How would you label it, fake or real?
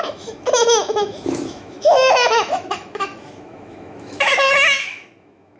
fake